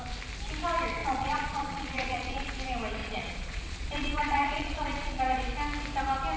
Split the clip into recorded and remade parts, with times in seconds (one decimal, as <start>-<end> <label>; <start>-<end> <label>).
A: 0.0-1.0 recorded; 1.0-2.5 remade; 2.5-3.0 recorded; 3.0-5.2 remade; 5.2-6.4 recorded